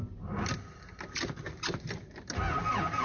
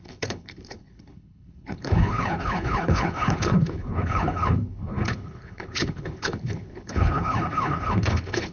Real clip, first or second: first